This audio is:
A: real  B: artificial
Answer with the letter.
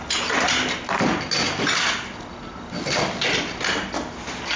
A